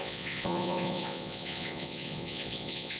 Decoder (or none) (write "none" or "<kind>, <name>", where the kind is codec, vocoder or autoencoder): vocoder, Vocos